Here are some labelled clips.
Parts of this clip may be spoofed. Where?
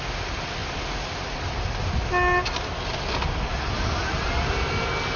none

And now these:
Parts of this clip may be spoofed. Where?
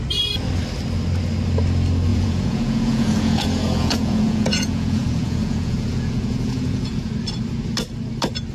2.1-7.1